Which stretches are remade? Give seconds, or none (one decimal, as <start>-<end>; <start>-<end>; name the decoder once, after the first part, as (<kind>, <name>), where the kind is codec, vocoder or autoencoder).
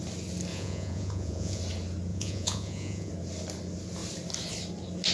0.5-1.6 (vocoder, Vocos); 2.1-3.1